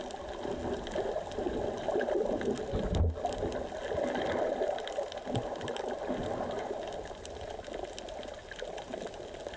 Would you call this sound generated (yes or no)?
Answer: no